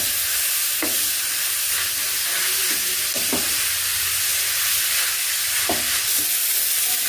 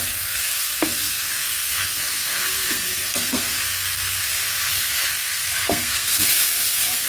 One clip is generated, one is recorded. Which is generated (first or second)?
second